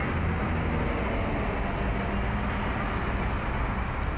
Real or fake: real